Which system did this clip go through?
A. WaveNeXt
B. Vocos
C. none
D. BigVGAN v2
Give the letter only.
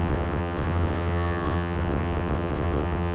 A